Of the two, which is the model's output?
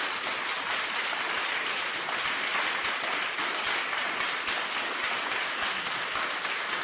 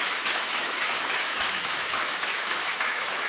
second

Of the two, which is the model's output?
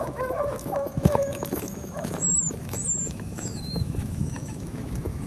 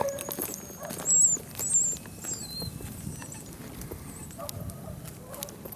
first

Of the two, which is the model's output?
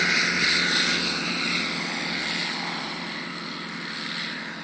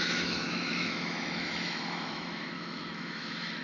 second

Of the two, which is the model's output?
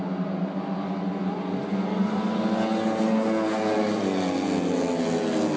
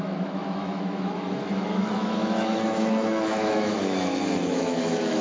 second